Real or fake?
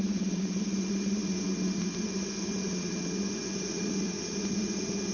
fake